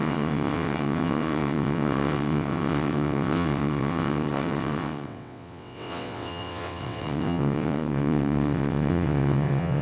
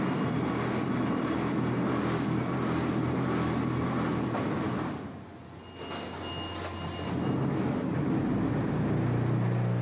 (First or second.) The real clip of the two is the second